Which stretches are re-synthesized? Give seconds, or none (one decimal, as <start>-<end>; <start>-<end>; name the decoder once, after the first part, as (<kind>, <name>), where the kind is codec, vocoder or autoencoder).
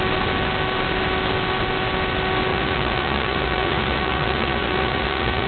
2.5-5.5 (vocoder, Vocos)